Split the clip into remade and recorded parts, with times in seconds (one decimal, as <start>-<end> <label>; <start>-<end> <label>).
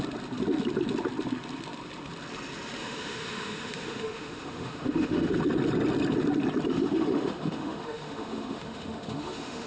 0.0-2.8 recorded; 2.8-5.3 remade; 5.3-6.7 recorded; 6.7-9.7 remade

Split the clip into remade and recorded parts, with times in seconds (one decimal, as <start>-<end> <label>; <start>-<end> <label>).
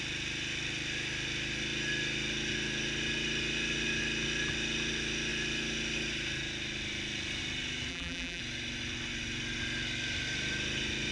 0.0-7.9 recorded; 7.9-8.4 remade; 8.4-11.1 recorded